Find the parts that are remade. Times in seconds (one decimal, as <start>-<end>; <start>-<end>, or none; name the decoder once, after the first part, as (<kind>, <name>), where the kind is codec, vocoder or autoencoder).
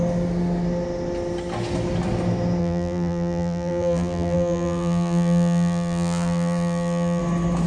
2.6-7.2 (vocoder, BigVGAN v2)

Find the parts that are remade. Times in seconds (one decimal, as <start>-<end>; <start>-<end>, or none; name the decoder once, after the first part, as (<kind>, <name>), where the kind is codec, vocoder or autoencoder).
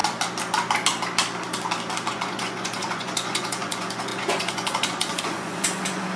2.1-6.2 (vocoder, Vocos)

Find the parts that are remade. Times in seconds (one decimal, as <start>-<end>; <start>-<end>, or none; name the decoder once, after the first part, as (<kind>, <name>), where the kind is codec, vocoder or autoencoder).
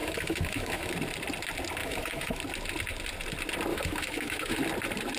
0.0-0.9 (autoencoder, DAC-VAE); 1.8-2.4; 3.7-4.6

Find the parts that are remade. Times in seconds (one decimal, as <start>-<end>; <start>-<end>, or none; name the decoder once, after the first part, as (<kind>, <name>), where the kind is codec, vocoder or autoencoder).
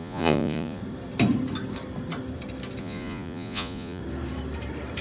0.0-0.8 (vocoder, Vocos); 2.8-4.0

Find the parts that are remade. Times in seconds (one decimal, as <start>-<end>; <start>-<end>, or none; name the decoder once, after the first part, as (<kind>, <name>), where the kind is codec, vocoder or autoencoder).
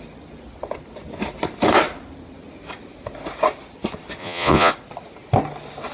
4.2-4.7 (vocoder, Vocos)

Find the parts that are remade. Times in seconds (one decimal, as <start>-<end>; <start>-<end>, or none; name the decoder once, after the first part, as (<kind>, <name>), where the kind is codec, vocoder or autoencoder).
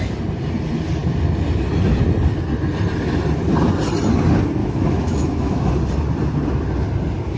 4.6-5.7 (autoencoder, DAC-VAE)